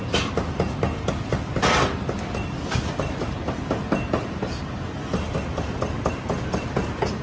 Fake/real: real